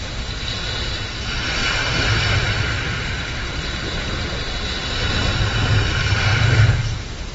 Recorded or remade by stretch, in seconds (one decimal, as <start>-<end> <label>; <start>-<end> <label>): 0.0-1.6 recorded; 1.6-4.4 remade; 4.4-6.3 recorded; 6.3-7.3 remade